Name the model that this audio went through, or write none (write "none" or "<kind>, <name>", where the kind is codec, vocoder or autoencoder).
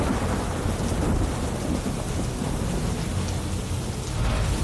none